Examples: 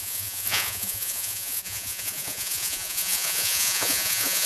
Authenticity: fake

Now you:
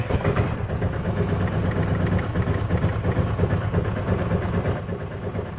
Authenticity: real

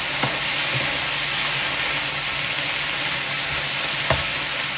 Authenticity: real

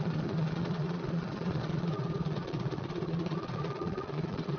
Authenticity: fake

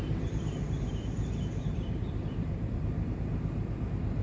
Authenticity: fake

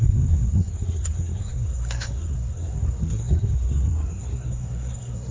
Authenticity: fake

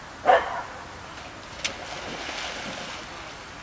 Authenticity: real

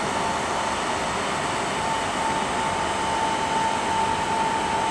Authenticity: real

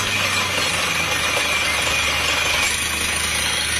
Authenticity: real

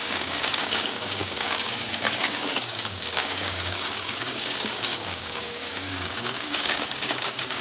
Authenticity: fake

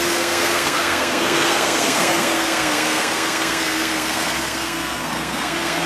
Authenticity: fake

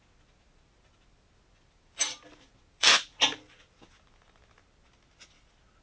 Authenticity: real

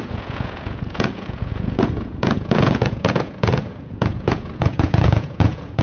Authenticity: fake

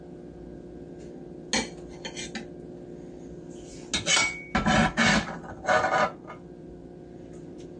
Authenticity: real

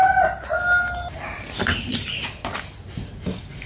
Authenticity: real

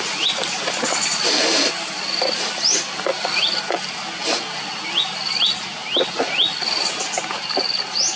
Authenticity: real